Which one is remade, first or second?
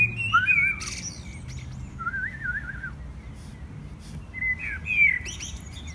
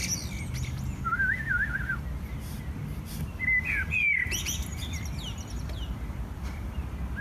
second